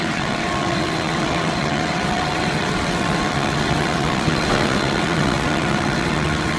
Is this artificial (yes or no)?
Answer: yes